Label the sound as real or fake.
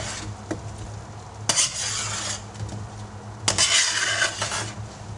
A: real